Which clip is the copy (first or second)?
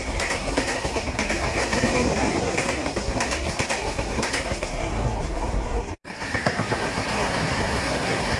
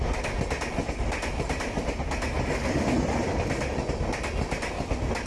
first